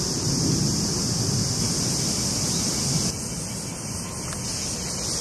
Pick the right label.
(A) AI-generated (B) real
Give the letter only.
B